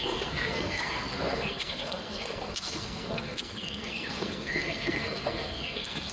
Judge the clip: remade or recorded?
remade